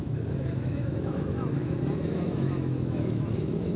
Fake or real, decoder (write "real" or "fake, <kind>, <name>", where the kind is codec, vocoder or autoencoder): fake, autoencoder, DAC-VAE